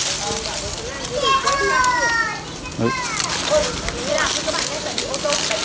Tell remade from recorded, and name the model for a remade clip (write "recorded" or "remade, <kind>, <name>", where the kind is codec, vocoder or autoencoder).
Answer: recorded